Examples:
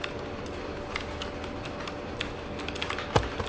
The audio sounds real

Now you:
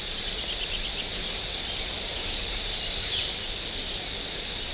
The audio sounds real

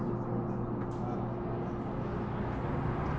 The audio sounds real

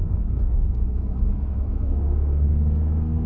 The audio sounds fake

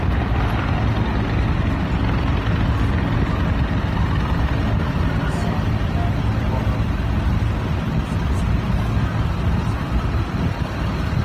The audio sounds real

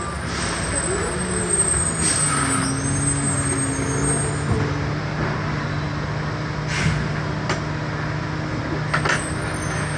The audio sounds real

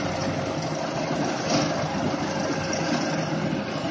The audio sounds real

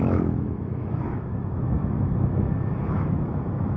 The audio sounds fake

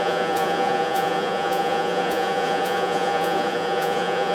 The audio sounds fake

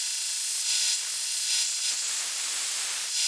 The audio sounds real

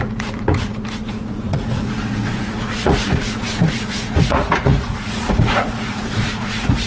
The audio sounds fake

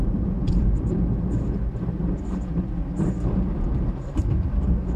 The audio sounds real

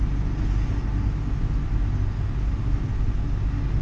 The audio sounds real